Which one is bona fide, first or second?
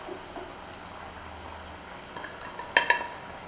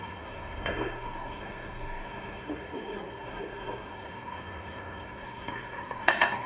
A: first